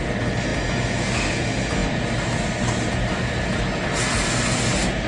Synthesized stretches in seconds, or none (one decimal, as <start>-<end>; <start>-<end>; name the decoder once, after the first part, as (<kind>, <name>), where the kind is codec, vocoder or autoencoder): none